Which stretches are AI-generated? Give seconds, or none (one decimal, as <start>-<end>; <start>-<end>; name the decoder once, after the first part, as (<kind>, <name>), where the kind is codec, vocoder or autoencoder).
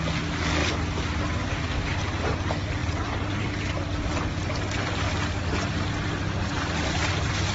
2.8-7.5 (vocoder, BigVGAN v2)